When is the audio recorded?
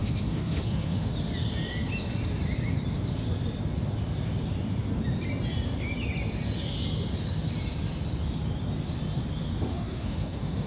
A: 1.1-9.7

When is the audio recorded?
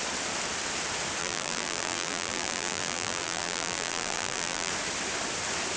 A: 0.0-1.2; 4.7-5.8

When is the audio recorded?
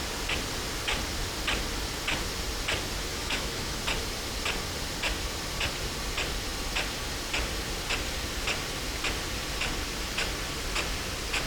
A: 0.0-3.1; 3.8-11.5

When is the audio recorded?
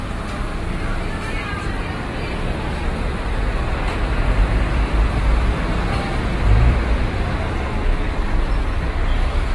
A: 0.0-3.1; 6.7-9.5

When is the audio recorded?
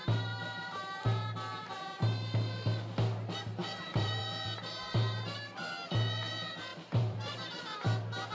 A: 0.0-3.6; 4.2-6.7; 7.6-8.3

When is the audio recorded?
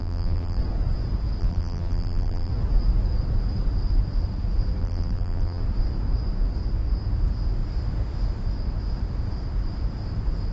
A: 0.6-1.4; 2.5-4.8; 5.6-10.5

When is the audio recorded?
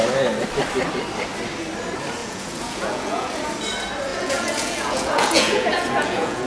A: 0.0-2.2; 3.3-4.1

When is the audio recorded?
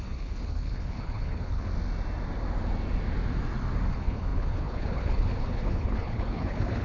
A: 1.7-3.9